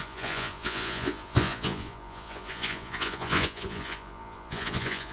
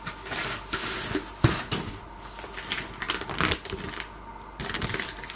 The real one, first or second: second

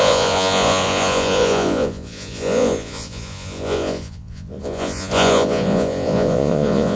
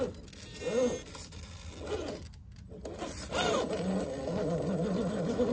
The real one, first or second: second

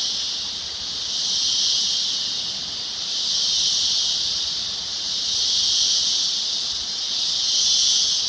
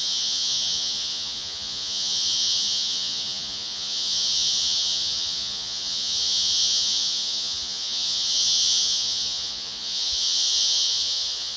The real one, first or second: first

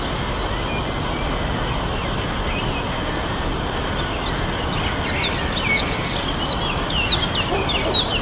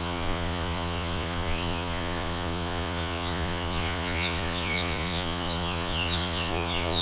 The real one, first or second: first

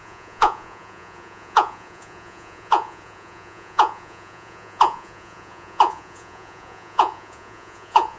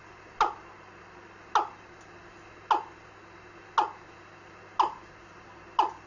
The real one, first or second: second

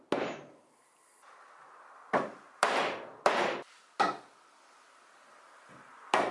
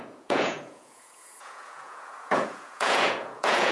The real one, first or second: first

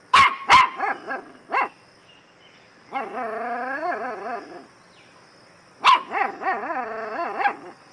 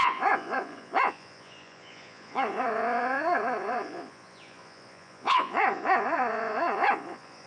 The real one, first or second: first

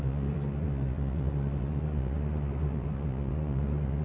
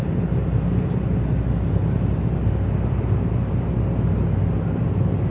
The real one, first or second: second